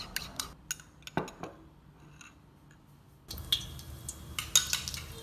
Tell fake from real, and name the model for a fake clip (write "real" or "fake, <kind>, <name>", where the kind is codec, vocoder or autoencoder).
real